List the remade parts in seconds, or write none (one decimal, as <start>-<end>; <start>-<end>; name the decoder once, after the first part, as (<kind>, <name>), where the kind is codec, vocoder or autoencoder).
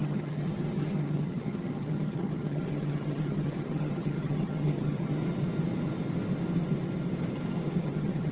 0.0-5.2 (vocoder, HiFi-GAN); 7.8-8.3